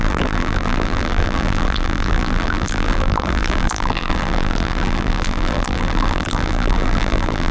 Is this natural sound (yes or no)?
no